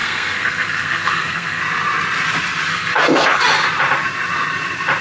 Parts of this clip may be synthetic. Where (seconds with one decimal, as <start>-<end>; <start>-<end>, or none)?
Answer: 0.0-1.6; 2.7-3.4